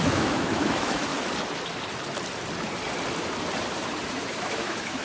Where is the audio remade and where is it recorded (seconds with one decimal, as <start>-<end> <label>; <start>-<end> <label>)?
0.0-1.1 remade; 1.1-4.1 recorded; 4.1-5.0 remade